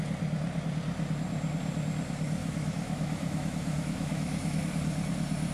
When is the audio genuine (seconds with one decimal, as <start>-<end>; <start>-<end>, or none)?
0.0-2.4; 4.6-5.5